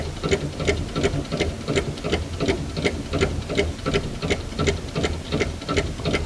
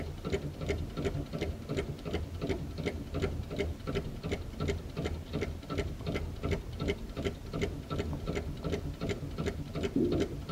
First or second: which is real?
first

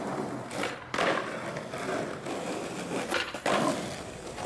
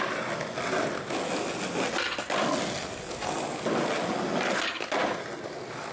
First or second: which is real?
second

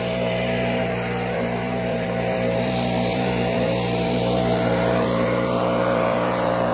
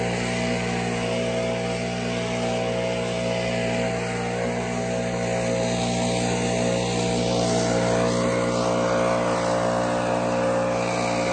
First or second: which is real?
second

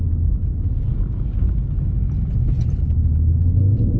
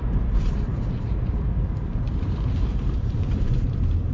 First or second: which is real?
first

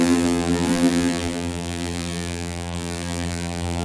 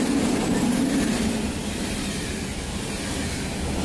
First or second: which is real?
second